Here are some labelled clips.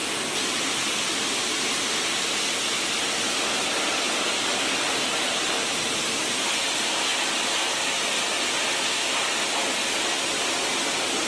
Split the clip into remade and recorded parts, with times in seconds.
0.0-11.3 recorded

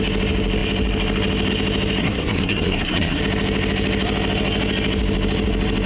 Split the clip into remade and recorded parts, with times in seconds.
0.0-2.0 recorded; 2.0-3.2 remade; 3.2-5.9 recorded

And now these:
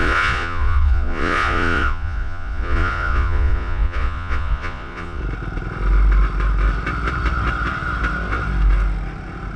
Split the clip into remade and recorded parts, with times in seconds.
0.0-5.2 remade; 5.2-9.6 recorded

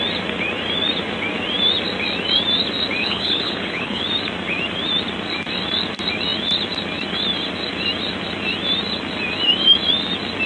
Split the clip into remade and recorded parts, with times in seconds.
0.0-3.0 recorded; 3.0-4.0 remade; 4.0-10.5 recorded

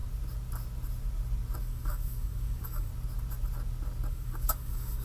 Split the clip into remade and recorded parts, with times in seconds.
0.0-1.6 recorded; 1.6-2.9 remade; 2.9-4.1 recorded; 4.1-5.0 remade